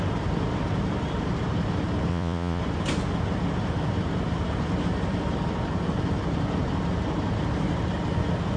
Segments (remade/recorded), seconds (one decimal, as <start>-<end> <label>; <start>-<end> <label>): 0.0-2.1 recorded; 2.1-2.6 remade; 2.6-8.6 recorded